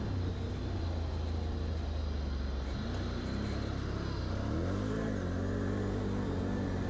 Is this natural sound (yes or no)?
yes